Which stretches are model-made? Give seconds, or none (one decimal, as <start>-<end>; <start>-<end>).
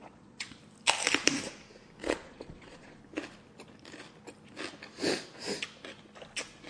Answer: 0.0-0.6; 2.0-3.0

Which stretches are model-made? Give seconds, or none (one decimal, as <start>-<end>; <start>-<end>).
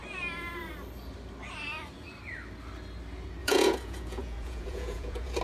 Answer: 3.4-5.4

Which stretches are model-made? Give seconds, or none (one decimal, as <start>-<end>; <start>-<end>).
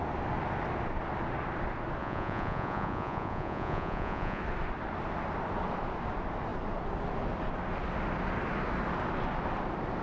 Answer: 2.0-4.4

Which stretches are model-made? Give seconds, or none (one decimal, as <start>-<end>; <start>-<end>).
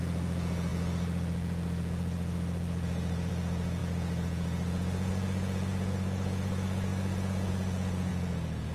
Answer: 0.0-8.7